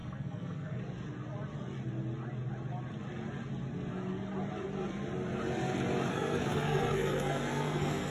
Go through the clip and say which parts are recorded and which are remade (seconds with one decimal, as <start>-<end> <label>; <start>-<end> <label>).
0.0-0.8 remade; 0.8-6.1 recorded; 6.1-8.1 remade